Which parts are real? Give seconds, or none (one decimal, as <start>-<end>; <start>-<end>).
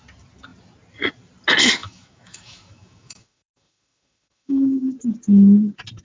0.0-1.8; 4.9-6.0